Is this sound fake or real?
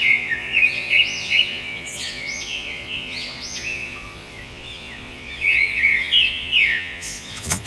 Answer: fake